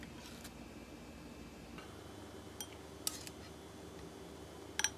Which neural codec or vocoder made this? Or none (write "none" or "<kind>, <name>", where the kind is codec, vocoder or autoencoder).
none